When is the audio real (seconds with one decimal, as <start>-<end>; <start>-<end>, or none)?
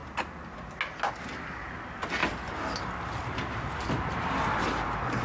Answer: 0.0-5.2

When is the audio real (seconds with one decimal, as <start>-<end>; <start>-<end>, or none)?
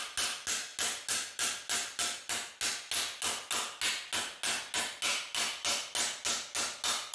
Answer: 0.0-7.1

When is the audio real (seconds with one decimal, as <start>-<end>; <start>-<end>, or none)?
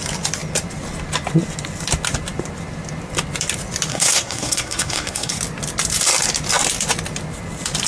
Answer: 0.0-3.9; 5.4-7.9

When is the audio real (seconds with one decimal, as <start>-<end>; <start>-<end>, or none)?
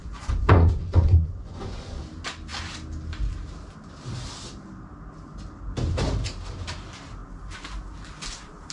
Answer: 2.0-8.7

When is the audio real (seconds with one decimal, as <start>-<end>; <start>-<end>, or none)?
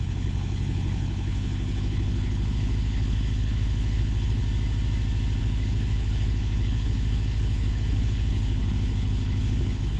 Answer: 4.4-5.4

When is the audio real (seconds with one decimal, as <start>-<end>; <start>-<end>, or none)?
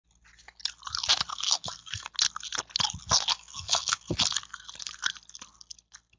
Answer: 0.0-1.3; 2.1-3.3; 4.1-6.2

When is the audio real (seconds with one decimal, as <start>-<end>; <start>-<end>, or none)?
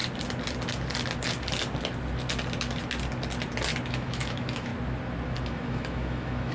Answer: 0.0-3.9; 4.7-5.4